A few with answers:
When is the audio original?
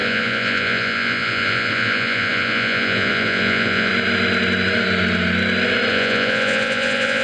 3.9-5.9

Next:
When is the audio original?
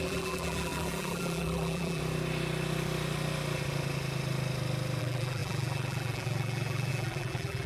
2.0-5.0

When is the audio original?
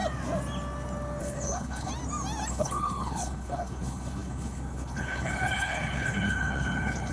0.0-1.2; 1.9-2.5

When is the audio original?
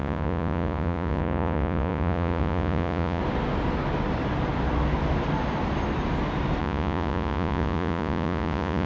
3.2-6.6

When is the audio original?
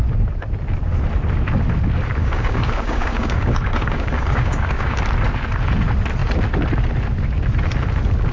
0.0-2.2; 5.0-8.3